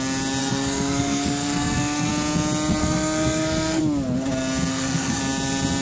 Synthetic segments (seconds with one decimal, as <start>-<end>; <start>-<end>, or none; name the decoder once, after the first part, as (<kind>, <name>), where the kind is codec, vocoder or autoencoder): 0.4-2.1 (codec, SNAC); 2.8-3.8; 4.7-5.2